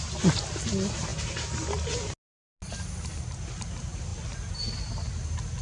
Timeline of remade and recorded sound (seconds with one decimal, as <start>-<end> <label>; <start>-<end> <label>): 0.0-5.6 recorded